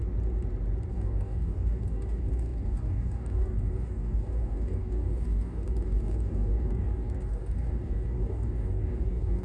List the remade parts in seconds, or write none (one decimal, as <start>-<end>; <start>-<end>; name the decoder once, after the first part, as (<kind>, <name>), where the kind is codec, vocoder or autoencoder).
0.9-9.4 (codec, DAC)